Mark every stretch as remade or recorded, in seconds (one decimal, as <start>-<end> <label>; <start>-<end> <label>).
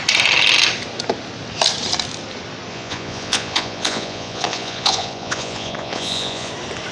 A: 0.0-2.7 recorded; 2.7-6.5 remade; 6.5-6.9 recorded